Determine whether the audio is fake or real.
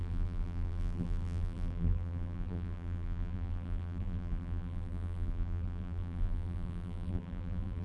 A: fake